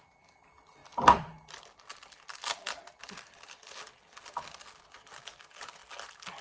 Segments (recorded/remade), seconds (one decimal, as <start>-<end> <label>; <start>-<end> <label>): 0.0-0.8 recorded; 0.8-1.9 remade; 1.9-6.4 recorded